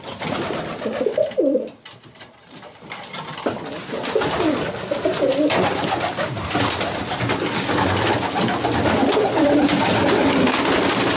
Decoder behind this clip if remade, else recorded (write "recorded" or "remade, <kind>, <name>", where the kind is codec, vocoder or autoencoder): recorded